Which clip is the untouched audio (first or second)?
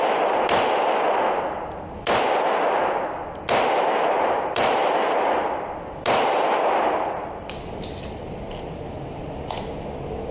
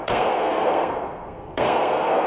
first